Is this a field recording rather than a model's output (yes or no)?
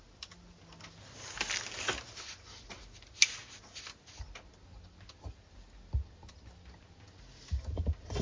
yes